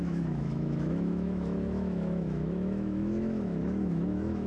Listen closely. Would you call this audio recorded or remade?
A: remade